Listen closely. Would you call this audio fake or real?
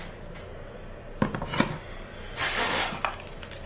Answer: real